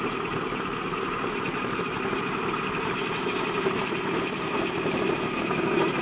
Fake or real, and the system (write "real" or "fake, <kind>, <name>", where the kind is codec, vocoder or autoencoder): real